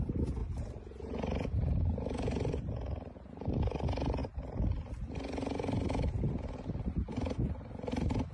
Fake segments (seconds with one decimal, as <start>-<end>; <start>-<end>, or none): 0.4-3.6